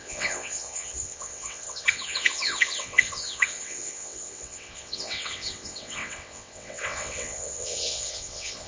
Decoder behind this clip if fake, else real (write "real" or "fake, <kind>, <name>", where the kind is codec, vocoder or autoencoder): fake, vocoder, WaveNeXt